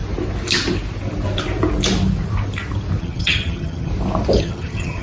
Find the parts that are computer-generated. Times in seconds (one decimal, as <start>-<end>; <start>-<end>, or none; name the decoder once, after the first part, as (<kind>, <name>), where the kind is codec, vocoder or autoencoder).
3.0-3.9 (vocoder, HiFi-GAN); 4.4-5.0